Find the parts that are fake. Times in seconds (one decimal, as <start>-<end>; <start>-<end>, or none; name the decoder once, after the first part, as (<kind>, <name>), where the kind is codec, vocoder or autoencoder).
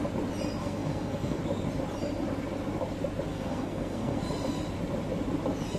0.6-1.4 (codec, SNAC); 3.3-4.2